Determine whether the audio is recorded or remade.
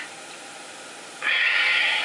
recorded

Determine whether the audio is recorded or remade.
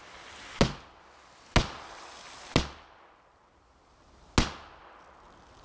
recorded